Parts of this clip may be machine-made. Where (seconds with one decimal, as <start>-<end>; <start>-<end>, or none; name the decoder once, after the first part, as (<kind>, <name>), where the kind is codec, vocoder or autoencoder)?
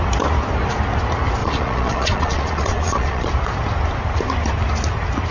1.4-3.3 (vocoder, Vocos)